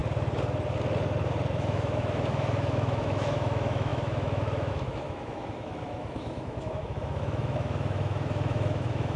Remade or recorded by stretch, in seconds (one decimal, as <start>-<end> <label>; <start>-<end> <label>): 0.0-1.5 recorded; 1.5-9.2 remade